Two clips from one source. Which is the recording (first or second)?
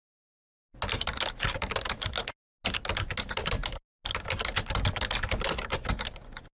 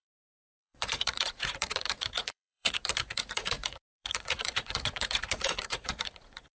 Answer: first